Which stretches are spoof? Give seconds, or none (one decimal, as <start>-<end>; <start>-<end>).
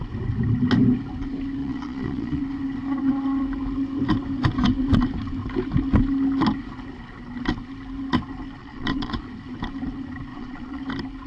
1.6-2.4; 8.6-9.2; 10.3-10.8